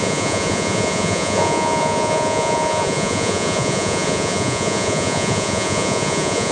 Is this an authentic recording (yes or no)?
no